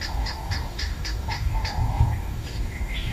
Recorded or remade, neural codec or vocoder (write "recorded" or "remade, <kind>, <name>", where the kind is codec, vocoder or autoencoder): remade, codec, DAC